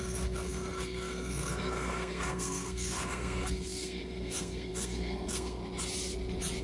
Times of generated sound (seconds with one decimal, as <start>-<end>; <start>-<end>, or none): 0.0-5.6